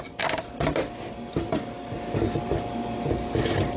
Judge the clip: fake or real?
real